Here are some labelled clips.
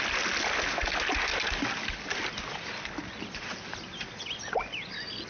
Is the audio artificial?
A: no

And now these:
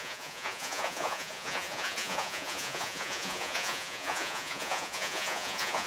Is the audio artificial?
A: yes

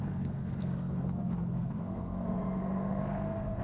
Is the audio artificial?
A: yes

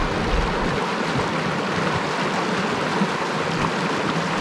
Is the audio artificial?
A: no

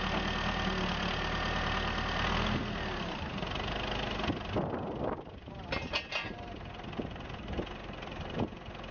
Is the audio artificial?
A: no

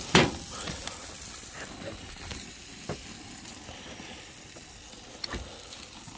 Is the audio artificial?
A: no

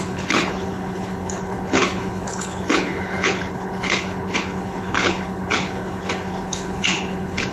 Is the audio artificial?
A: yes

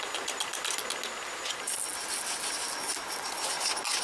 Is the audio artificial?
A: no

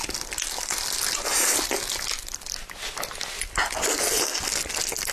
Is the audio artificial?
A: no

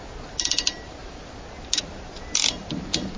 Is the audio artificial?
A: no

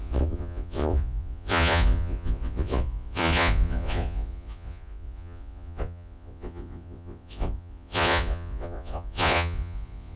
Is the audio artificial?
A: yes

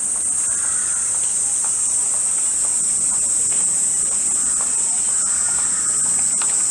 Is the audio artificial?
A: no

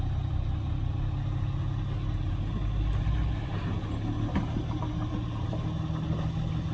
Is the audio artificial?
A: no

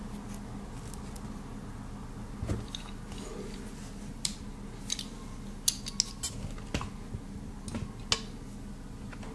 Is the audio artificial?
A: no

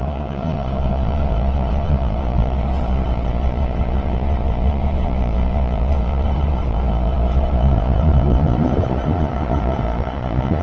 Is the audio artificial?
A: yes